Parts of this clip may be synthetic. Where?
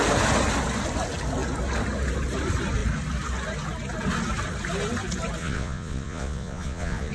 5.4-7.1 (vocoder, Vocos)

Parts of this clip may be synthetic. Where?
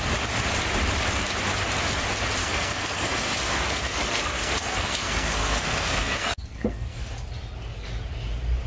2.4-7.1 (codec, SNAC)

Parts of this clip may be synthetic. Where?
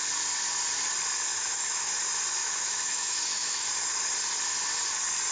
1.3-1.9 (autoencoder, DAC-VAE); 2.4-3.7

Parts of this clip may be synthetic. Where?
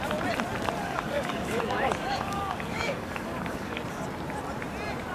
0.8-3.8 (codec, DAC)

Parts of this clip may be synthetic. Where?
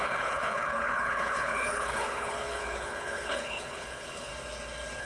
0.0-4.3 (codec, HILCodec)